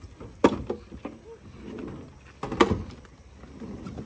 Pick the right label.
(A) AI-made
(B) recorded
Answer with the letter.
B